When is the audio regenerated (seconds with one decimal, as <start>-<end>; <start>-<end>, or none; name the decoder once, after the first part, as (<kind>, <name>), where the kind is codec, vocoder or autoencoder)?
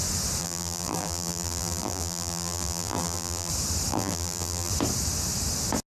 0.4-3.5 (vocoder, BigVGAN v2); 3.9-4.7